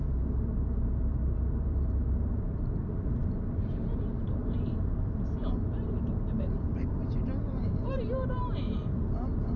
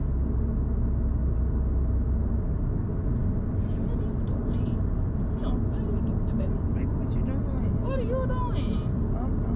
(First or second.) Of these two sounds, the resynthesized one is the first